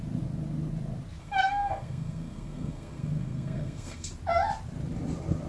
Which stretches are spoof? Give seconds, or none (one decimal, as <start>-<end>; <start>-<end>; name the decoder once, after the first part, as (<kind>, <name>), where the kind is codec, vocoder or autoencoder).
1.2-4.1 (codec, SNAC)

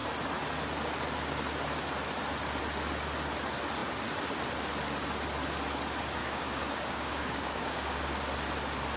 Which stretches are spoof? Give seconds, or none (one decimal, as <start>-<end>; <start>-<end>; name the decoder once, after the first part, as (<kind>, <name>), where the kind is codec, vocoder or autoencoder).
6.2-8.2 (codec, DAC)

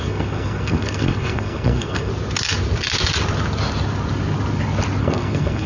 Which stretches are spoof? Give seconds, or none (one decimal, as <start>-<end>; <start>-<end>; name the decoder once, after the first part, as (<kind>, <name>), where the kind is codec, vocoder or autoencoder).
0.0-2.1 (codec, SNAC); 5.0-5.7

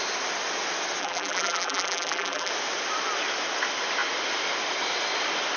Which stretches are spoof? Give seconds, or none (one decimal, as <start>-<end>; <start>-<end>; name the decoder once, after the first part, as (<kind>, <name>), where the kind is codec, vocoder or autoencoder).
1.0-2.5 (vocoder, BigVGAN v2)